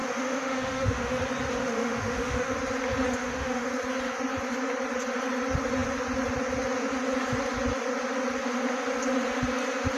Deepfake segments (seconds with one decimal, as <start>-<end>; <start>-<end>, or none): 0.0-1.2; 1.6-2.5; 3.2-3.7